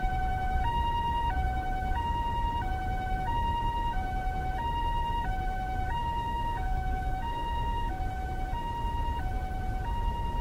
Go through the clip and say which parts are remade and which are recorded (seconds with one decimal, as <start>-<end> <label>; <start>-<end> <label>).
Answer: 0.0-6.0 recorded; 6.0-8.0 remade; 8.0-10.4 recorded